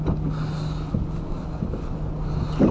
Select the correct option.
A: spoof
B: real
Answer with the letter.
B